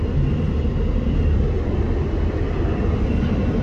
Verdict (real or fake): real